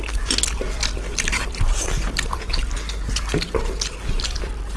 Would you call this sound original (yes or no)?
yes